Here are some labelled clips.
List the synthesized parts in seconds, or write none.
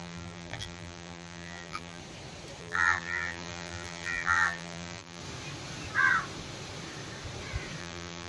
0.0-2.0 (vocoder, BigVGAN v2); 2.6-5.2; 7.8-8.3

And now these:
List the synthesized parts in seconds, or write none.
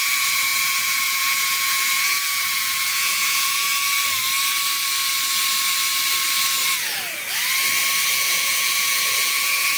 0.0-3.7 (vocoder, Vocos); 8.1-9.8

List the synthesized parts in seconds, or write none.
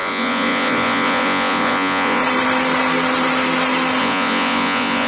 0.0-2.2 (vocoder, Vocos); 4.0-5.1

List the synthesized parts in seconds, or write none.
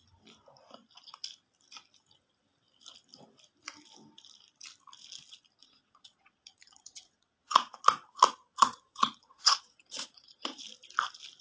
5.6-7.7 (vocoder, Vocos); 8.5-10.6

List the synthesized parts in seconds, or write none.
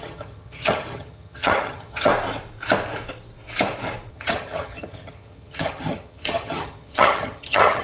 0.0-2.1 (vocoder, HiFi-GAN); 4.1-7.8